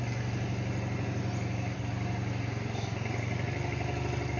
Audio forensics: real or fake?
real